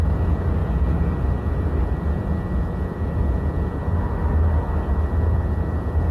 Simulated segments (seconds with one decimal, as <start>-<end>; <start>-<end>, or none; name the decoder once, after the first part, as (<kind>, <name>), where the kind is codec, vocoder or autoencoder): none